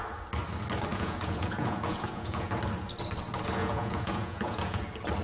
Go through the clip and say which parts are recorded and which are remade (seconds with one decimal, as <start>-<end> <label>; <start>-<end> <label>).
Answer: 0.0-0.9 recorded; 0.9-2.5 remade; 2.5-3.6 recorded; 3.6-4.8 remade; 4.8-5.2 recorded